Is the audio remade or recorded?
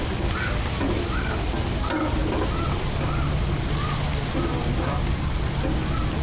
recorded